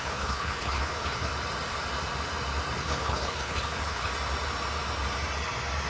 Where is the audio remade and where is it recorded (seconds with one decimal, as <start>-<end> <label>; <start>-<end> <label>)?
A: 0.0-1.3 remade; 1.3-2.8 recorded; 2.8-4.1 remade; 4.1-5.9 recorded